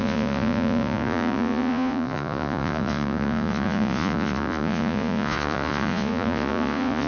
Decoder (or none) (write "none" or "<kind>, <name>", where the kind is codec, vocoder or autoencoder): vocoder, Vocos